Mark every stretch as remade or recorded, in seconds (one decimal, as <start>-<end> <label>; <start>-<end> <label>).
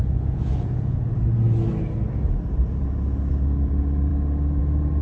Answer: 0.0-1.0 remade; 1.0-5.0 recorded